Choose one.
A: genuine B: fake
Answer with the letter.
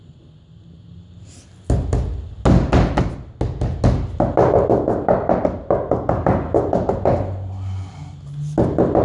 A